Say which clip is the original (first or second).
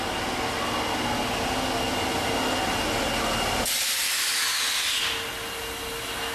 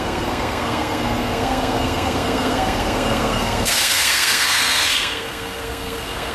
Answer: first